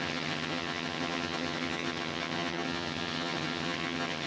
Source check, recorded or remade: remade